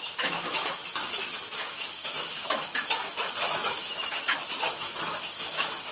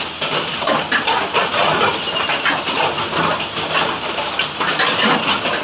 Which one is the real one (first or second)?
second